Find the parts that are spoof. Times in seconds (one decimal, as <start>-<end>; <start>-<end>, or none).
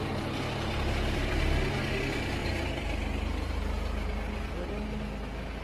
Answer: 0.0-1.4; 2.4-4.7